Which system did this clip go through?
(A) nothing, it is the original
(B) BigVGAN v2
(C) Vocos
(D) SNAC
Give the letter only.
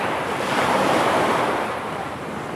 B